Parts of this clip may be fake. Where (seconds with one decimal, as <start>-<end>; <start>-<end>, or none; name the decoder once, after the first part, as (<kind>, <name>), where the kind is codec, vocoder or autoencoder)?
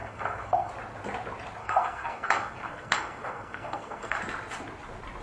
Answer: 0.0-0.7 (codec, SNAC); 1.6-4.2